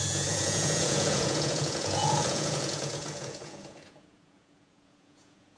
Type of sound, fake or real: fake